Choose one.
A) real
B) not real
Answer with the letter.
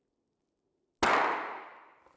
A